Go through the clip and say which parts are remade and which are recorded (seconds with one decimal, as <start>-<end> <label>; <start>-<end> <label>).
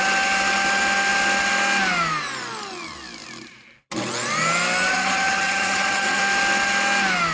0.0-4.9 recorded; 4.9-6.2 remade; 6.2-7.3 recorded